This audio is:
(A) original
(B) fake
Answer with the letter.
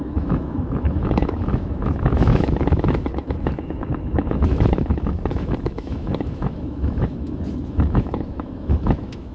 B